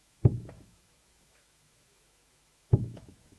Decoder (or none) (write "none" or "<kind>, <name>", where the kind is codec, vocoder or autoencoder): autoencoder, DAC-VAE